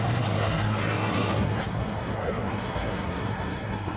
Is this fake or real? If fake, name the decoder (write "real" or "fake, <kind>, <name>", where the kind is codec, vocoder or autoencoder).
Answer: fake, codec, SNAC